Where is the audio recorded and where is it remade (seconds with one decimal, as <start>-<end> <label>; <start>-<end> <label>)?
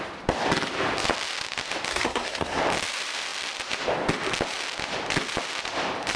0.0-1.9 recorded; 1.9-2.6 remade; 2.6-6.2 recorded